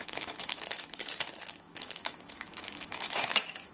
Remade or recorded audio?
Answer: remade